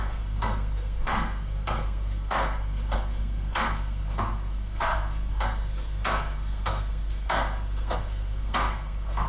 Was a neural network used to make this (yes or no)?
yes